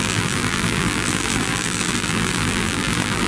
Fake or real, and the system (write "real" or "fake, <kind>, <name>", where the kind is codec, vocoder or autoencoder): fake, vocoder, BigVGAN v2